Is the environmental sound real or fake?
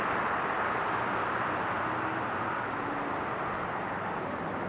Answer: real